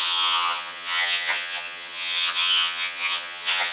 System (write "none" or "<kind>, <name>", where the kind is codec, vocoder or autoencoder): vocoder, HiFi-GAN